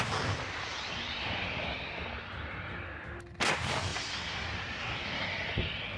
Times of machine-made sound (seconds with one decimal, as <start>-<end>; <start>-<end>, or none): 0.7-1.9; 3.9-4.9